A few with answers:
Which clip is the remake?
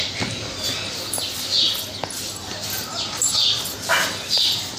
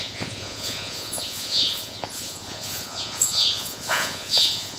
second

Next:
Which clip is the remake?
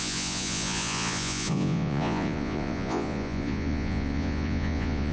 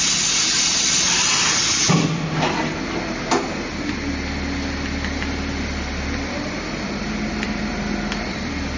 first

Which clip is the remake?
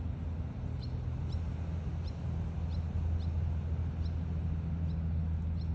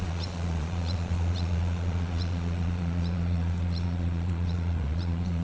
second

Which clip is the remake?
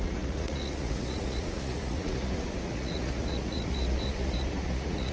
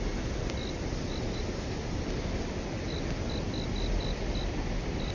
first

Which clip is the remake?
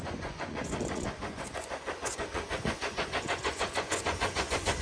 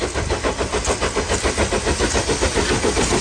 first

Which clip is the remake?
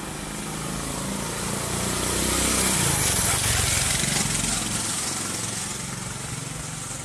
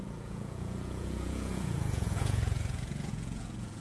second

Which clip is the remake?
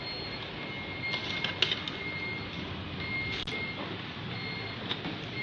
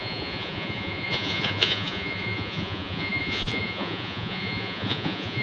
second